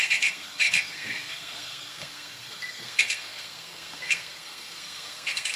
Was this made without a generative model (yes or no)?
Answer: no